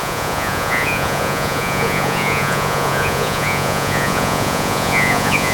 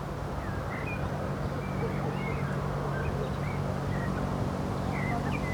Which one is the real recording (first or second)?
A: second